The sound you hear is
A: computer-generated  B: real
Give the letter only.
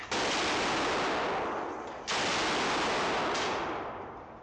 B